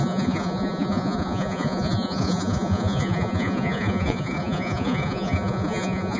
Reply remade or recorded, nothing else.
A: remade